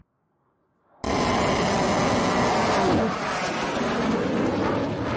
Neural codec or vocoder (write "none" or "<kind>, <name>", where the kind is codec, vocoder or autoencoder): none